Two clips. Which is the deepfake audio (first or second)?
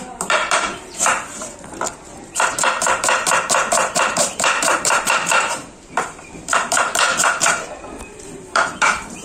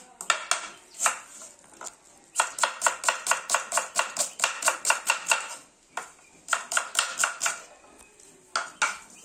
first